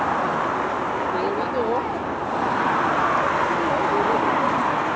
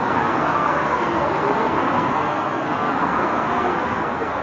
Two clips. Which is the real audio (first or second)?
first